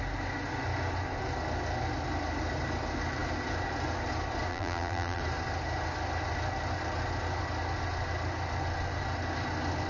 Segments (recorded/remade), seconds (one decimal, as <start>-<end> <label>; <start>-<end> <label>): 0.0-4.5 recorded; 4.5-5.2 remade; 5.2-9.9 recorded